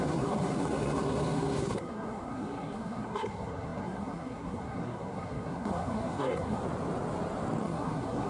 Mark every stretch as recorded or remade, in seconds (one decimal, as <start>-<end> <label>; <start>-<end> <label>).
0.0-6.6 remade; 6.6-7.6 recorded; 7.6-8.3 remade